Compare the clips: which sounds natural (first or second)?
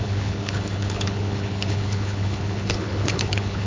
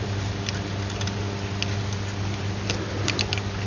second